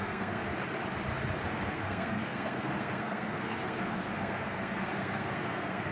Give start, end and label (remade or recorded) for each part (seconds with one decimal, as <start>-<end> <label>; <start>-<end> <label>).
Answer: 0.0-0.4 remade; 0.4-1.5 recorded; 1.5-5.9 remade